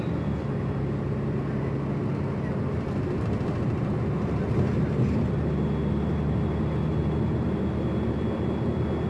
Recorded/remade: recorded